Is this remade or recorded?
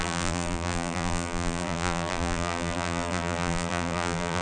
remade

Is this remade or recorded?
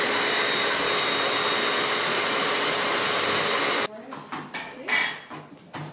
recorded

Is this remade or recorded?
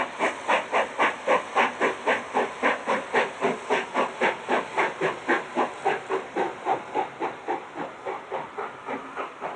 recorded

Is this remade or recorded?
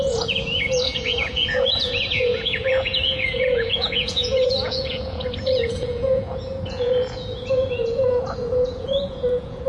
remade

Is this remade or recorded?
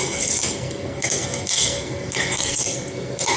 remade